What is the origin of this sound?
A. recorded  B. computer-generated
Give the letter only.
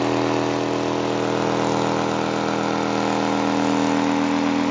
A